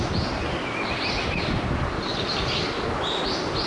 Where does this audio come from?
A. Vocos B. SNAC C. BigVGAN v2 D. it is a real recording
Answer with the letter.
D